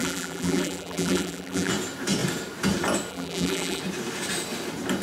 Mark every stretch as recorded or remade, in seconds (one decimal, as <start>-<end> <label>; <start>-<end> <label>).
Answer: 0.0-1.7 remade; 1.7-3.1 recorded; 3.1-3.8 remade; 3.8-5.0 recorded